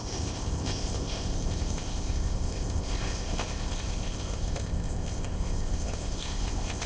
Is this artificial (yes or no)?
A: yes